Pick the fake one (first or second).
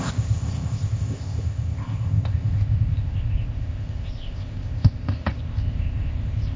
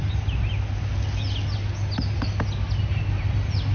first